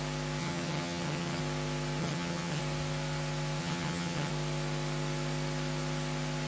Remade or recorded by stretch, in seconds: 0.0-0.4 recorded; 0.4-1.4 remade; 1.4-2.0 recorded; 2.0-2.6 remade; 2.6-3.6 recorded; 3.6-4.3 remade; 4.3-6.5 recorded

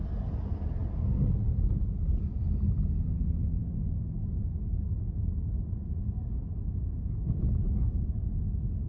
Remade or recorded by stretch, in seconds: 0.0-5.8 recorded; 5.8-6.4 remade; 6.4-7.4 recorded; 7.4-8.0 remade; 8.0-8.9 recorded

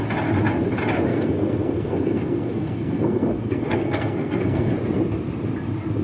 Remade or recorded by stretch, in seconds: 0.0-1.1 recorded; 1.1-4.7 remade; 4.7-6.0 recorded